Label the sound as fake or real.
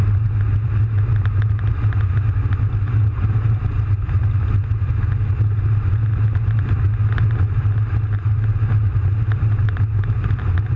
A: real